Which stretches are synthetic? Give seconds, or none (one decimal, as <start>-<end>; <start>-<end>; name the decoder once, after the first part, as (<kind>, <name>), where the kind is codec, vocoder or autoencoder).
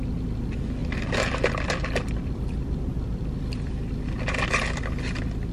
0.8-4.1 (vocoder, BigVGAN v2)